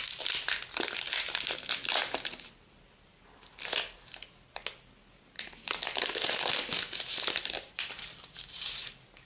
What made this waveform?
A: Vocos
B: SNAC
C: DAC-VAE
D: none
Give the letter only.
D